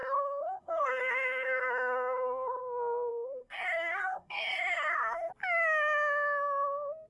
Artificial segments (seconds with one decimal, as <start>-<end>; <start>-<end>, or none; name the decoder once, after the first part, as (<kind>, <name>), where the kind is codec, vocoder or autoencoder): 0.0-2.6 (codec, SNAC); 3.1-5.3